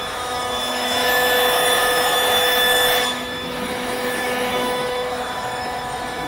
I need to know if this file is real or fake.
fake